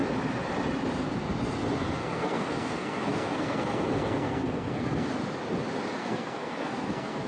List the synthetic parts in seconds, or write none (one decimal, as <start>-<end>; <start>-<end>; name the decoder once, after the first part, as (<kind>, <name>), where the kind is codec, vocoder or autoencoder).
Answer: 2.0-5.1 (codec, SNAC); 6.0-7.3